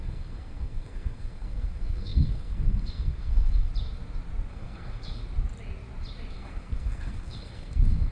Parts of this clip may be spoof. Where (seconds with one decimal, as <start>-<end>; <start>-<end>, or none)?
0.0-3.7; 4.5-5.2; 6.3-8.1